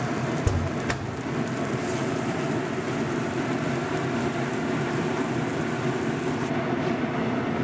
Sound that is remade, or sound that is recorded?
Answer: recorded